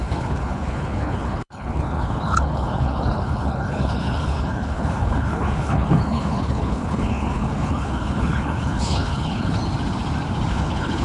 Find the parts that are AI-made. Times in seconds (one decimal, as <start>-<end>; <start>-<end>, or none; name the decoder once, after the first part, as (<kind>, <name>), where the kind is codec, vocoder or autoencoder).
0.0-9.6 (codec, HILCodec); 10.5-11.0